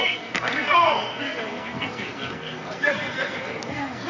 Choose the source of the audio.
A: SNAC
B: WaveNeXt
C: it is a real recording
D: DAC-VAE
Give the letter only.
A